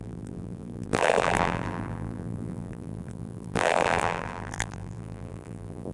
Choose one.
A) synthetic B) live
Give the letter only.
A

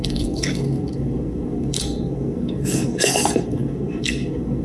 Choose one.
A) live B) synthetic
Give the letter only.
B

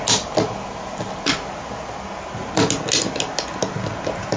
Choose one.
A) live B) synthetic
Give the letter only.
A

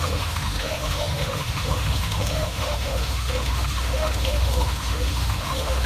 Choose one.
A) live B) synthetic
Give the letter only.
B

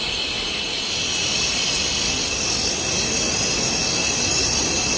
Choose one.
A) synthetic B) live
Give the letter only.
B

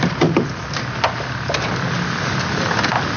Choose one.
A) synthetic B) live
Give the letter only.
B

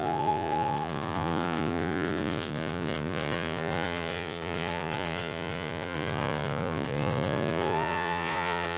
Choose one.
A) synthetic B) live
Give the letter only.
A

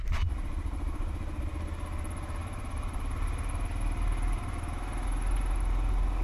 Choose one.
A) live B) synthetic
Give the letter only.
A